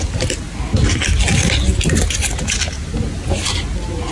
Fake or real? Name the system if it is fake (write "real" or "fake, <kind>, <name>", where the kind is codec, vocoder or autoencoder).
real